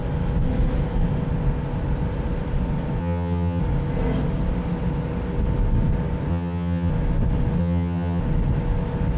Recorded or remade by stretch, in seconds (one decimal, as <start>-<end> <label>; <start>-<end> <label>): 0.0-3.0 recorded; 3.0-3.6 remade; 3.6-6.3 recorded; 6.3-6.9 remade; 6.9-7.6 recorded; 7.6-8.2 remade; 8.2-9.2 recorded